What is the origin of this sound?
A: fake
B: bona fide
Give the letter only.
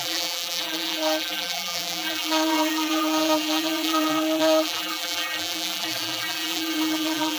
A